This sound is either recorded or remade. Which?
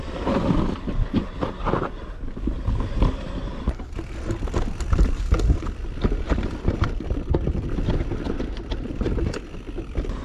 recorded